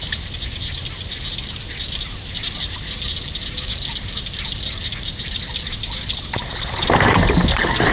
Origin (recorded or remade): recorded